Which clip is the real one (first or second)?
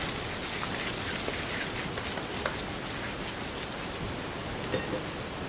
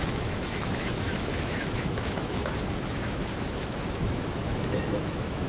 first